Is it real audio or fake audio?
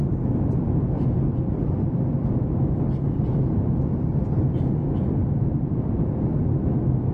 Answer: real